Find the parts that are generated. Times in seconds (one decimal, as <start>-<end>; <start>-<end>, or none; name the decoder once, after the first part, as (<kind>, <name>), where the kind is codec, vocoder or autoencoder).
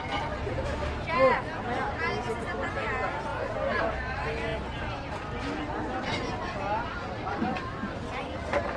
none